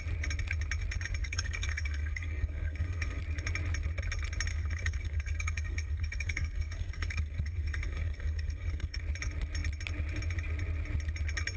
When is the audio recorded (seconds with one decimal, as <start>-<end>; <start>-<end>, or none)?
0.0-1.2; 3.2-4.5; 9.0-11.6